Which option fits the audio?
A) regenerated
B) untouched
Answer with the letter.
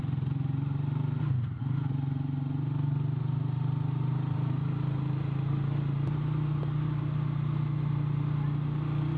B